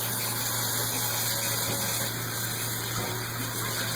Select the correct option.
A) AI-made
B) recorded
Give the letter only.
B